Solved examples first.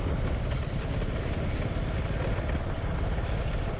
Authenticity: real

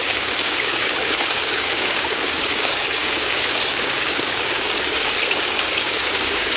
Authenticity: fake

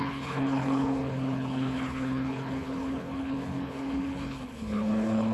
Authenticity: fake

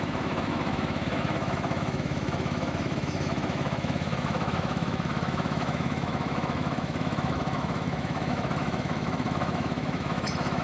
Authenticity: fake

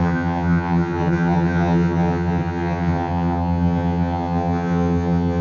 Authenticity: fake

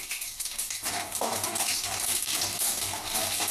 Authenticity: fake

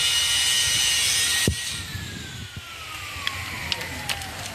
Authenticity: real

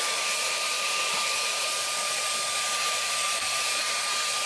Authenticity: fake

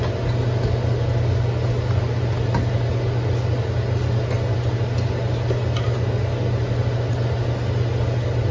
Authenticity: real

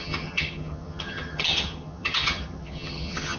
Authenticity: fake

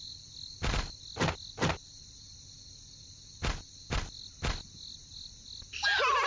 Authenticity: real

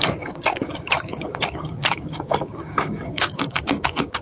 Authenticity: fake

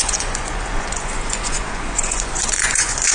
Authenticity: fake